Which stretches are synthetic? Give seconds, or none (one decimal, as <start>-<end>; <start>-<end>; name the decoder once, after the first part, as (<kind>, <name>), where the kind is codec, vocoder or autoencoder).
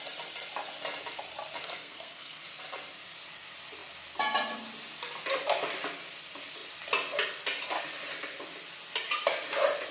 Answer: 1.6-2.4 (codec, SNAC)